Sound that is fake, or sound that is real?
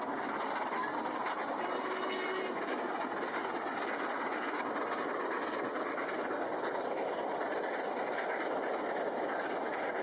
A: real